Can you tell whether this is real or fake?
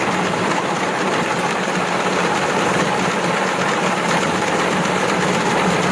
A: fake